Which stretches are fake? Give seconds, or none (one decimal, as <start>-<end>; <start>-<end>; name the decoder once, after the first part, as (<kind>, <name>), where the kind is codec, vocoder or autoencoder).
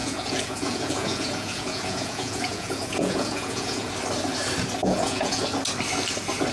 0.0-3.9 (vocoder, Vocos); 4.8-5.4